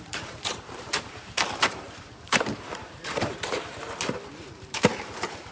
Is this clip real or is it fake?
fake